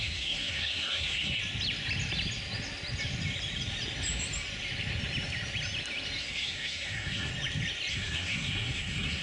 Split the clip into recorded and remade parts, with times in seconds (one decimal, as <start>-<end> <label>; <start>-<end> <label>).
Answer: 0.0-1.4 remade; 1.4-6.2 recorded; 6.2-7.3 remade; 7.3-7.9 recorded; 7.9-9.2 remade